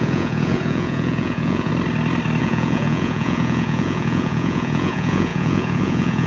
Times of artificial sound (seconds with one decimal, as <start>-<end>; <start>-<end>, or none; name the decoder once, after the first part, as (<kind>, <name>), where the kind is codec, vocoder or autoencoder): 0.0-1.7 (vocoder, Vocos); 2.4-6.3

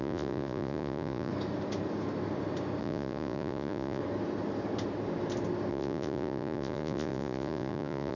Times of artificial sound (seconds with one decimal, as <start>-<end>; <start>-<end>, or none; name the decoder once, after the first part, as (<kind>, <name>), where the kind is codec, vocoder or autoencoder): 0.0-1.3 (vocoder, Vocos); 2.8-4.0; 5.7-8.2